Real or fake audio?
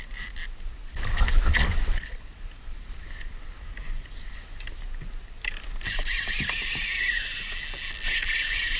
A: real